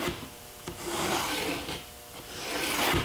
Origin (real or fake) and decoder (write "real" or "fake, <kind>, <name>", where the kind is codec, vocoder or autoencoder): fake, vocoder, BigVGAN v2